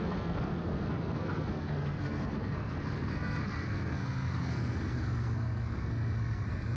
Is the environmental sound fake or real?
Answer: fake